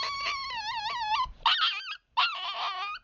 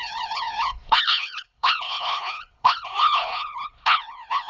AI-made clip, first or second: second